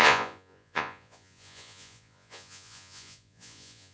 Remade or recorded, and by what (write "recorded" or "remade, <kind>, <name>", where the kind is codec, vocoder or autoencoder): remade, vocoder, Vocos